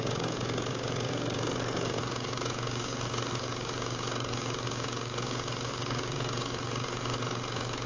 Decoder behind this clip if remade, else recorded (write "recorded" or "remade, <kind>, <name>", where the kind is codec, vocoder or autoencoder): remade, codec, DAC